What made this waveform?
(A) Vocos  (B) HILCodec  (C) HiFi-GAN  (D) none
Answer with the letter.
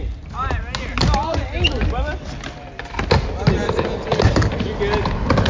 D